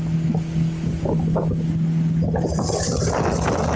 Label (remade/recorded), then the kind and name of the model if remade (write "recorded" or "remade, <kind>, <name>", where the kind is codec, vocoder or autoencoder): recorded